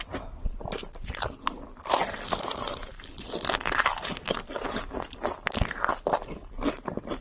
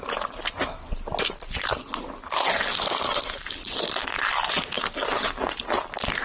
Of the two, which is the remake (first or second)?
first